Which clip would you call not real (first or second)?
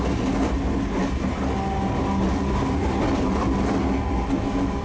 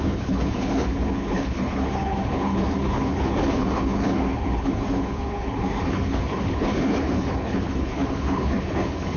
second